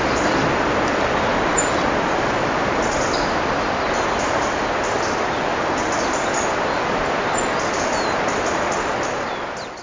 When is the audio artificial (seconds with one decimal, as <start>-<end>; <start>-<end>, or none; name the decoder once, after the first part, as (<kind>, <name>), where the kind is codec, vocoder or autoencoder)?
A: none